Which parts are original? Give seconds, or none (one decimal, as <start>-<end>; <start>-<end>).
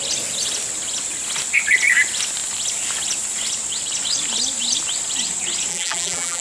0.0-5.7